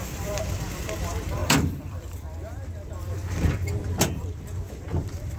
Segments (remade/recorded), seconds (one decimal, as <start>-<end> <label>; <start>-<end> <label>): 0.0-5.4 remade